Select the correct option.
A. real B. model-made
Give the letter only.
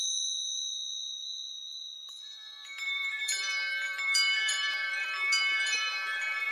B